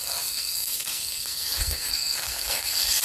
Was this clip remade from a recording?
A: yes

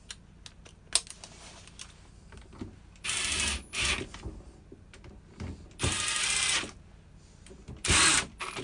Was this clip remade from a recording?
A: no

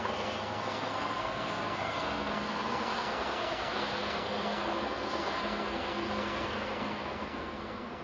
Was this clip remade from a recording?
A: yes